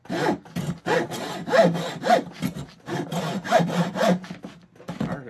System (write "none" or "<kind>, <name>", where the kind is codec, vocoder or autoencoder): none